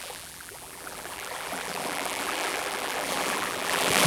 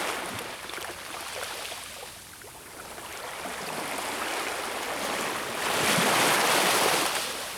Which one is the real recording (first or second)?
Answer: second